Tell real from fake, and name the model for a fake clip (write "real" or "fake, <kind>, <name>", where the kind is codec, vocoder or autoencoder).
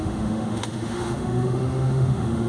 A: fake, autoencoder, DAC-VAE